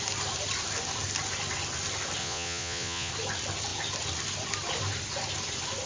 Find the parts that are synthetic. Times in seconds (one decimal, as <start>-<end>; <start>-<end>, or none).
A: 2.2-3.1